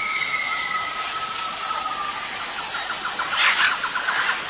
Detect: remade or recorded recorded